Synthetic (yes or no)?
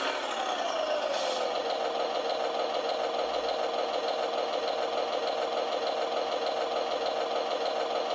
no